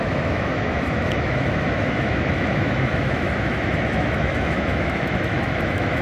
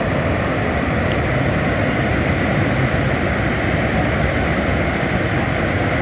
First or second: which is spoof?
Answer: first